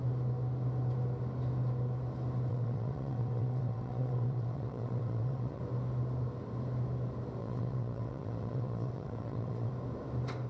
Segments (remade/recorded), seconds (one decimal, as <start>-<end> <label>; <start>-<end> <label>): 0.0-2.5 recorded; 2.5-5.6 remade; 5.6-7.4 recorded; 7.4-9.7 remade; 9.7-10.5 recorded